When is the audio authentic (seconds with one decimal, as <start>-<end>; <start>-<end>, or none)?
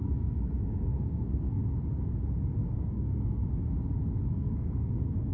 1.6-2.6; 3.4-4.3